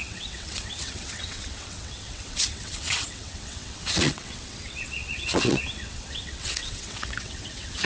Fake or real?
fake